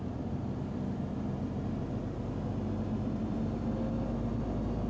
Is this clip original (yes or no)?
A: yes